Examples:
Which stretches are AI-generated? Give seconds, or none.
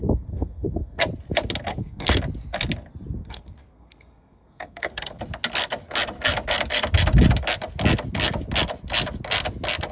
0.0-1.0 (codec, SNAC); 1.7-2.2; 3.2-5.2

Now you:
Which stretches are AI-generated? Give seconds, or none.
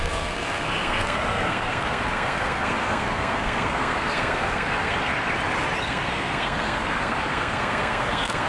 0.0-5.1 (codec, SNAC); 5.8-8.5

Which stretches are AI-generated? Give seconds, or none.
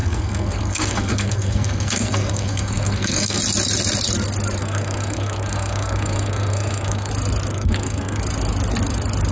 0.0-3.4 (codec, SNAC); 4.6-7.1; 7.5-8.2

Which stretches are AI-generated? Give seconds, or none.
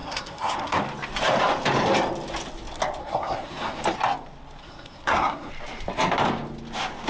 0.0-0.8 (codec, SNAC); 3.0-3.8; 4.6-5.5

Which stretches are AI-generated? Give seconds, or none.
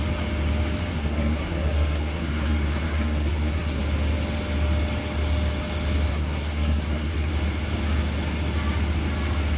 0.9-3.8 (codec, SNAC); 6.1-7.3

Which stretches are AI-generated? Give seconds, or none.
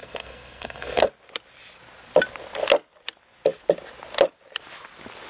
0.0-1.1 (codec, SNAC)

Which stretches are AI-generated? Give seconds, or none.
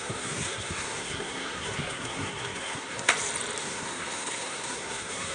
0.0-3.1 (codec, SNAC); 3.6-5.3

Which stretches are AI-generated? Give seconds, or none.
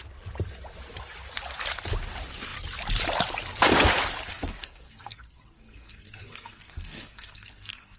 4.3-8.0 (codec, SNAC)